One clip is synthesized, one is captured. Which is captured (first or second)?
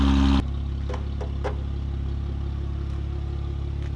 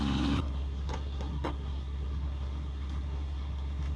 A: first